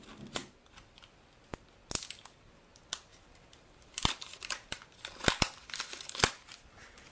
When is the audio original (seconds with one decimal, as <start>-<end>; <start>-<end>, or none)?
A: 0.0-0.4; 1.1-3.1